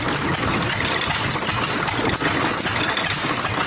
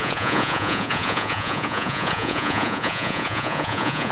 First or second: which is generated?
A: second